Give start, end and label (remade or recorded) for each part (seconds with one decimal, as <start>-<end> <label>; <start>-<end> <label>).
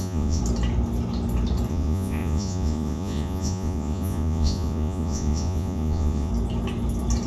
0.0-0.4 remade; 0.4-1.7 recorded; 1.7-6.3 remade; 6.3-7.3 recorded